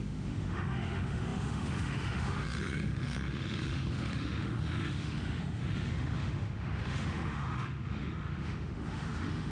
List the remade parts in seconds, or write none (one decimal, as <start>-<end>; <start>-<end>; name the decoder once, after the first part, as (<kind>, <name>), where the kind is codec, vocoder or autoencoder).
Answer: 0.0-9.5 (autoencoder, DAC-VAE)